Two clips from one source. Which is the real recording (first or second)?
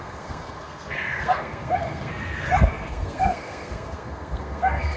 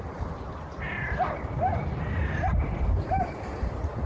second